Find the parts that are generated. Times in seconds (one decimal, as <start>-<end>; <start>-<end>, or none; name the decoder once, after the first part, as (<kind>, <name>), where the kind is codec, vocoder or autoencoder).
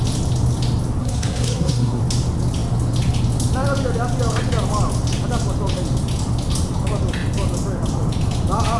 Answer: 1.0-2.0 (codec, SNAC)